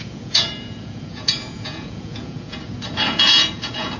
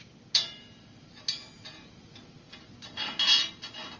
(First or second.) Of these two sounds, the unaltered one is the second